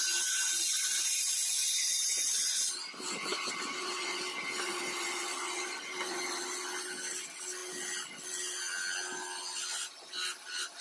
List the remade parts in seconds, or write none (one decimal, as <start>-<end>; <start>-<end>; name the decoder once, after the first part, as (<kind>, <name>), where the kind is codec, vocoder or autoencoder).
none